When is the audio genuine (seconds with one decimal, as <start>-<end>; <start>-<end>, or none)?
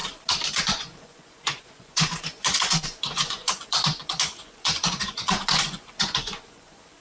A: 0.0-0.6